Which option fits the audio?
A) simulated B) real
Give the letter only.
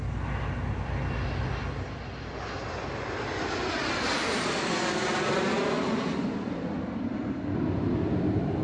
B